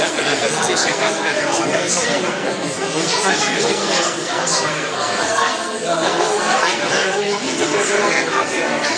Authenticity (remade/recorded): remade